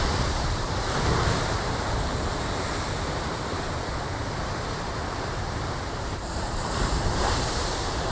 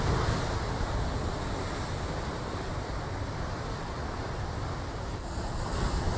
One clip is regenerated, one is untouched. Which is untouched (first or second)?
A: second